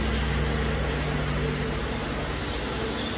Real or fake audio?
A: real